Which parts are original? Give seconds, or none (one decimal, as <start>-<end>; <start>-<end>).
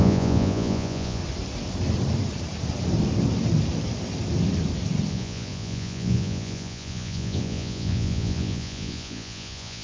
1.2-5.1